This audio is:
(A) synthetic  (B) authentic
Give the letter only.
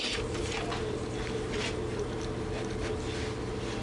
B